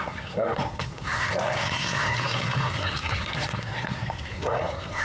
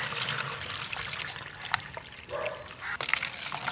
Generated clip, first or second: first